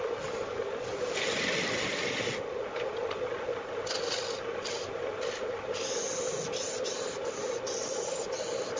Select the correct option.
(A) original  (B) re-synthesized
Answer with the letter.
A